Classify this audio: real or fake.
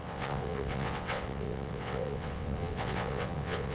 fake